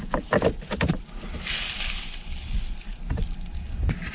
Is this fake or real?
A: real